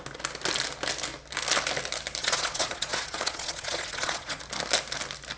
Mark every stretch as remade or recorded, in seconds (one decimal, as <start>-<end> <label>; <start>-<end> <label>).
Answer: 0.0-2.2 recorded; 2.2-4.4 remade; 4.4-5.4 recorded